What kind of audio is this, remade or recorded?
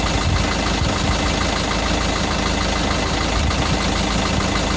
recorded